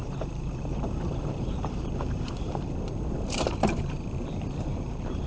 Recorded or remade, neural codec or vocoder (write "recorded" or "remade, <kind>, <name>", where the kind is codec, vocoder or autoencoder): remade, vocoder, BigVGAN v2